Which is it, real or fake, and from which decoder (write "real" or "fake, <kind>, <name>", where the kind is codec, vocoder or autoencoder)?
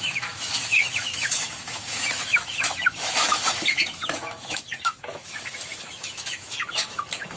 fake, autoencoder, DAC-VAE